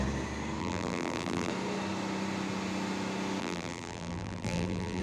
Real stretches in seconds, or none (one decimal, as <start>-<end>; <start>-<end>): 0.0-0.6; 1.5-3.4